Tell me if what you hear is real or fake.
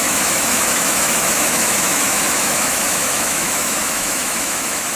fake